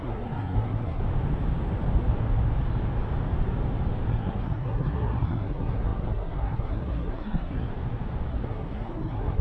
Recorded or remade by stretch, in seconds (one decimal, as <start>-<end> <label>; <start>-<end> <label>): 0.0-1.0 remade; 1.0-4.1 recorded; 4.1-7.7 remade; 7.7-8.3 recorded; 8.3-9.4 remade